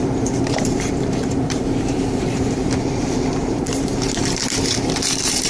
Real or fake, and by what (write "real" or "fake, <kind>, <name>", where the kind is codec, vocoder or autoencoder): fake, vocoder, BigVGAN v2